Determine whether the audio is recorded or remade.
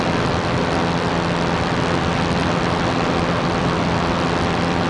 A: recorded